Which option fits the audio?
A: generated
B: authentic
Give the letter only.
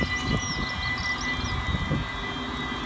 B